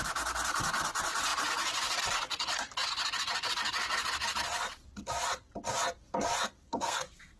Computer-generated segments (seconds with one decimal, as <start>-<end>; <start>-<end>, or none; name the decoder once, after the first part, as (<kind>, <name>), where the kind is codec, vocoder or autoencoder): 6.6-7.4 (codec, SNAC)